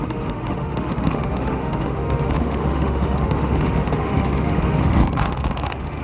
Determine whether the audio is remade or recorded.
remade